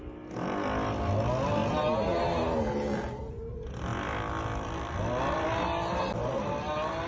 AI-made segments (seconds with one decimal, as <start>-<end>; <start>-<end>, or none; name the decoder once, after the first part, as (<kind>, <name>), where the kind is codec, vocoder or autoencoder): none